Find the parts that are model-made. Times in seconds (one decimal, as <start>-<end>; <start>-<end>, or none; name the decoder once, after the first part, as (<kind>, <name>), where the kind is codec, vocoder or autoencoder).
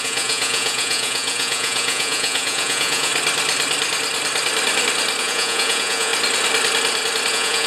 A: 0.0-3.1 (vocoder, Vocos); 5.2-6.1; 7.3-7.7